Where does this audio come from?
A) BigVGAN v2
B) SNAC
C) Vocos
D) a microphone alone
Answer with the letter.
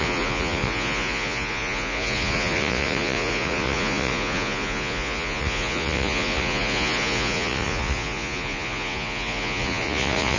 C